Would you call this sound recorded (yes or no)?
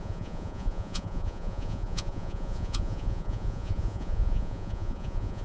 no